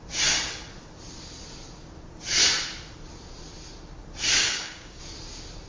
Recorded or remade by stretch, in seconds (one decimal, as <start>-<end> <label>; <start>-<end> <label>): 0.0-4.4 recorded; 4.4-5.0 remade; 5.0-5.7 recorded